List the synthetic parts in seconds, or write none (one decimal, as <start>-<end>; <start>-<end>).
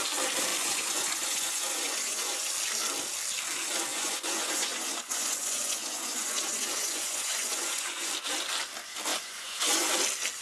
0.5-2.5; 3.9-8.1; 9.1-9.9